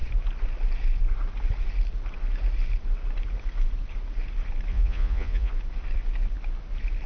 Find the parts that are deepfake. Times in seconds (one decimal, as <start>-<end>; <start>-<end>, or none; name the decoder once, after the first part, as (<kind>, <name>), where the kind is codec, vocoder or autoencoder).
4.7-5.5 (vocoder, Vocos)